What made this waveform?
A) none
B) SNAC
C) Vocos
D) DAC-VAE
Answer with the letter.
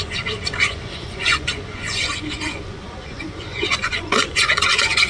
C